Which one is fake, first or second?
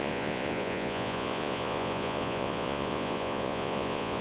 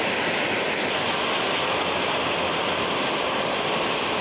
first